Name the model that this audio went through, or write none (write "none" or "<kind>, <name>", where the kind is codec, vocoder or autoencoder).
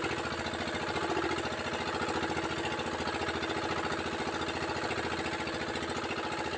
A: none